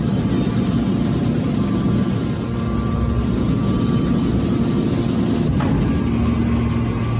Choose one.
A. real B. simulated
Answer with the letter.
A